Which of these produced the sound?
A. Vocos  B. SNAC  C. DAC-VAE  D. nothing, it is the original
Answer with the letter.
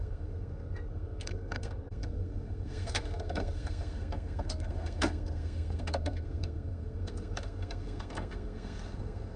B